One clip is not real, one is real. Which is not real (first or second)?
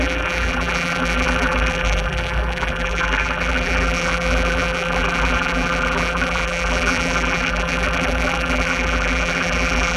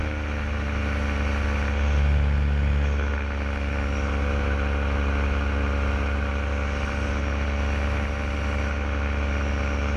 first